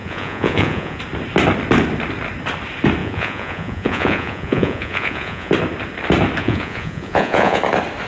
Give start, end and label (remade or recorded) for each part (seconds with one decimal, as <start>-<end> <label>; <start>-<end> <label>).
0.0-1.0 remade; 1.0-3.0 recorded; 3.0-5.5 remade; 5.5-6.4 recorded; 6.4-7.6 remade; 7.6-8.1 recorded